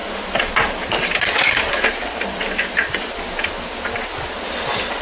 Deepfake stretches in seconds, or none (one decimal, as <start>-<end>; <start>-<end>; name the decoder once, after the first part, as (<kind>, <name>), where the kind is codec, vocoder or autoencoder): none